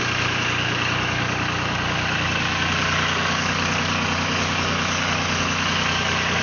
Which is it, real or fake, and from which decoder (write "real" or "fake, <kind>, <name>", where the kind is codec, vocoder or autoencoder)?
fake, codec, DAC